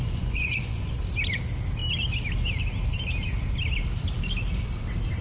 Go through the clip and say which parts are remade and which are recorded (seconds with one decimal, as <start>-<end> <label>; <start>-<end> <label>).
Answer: 0.0-1.0 remade; 1.0-5.2 recorded